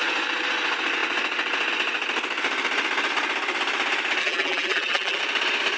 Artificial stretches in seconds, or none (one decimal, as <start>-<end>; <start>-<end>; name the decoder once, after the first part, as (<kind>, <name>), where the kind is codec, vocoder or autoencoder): 4.2-5.2 (vocoder, BigVGAN v2)